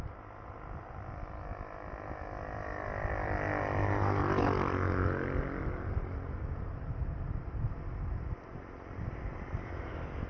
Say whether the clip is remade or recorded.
recorded